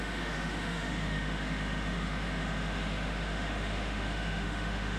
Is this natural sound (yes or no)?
no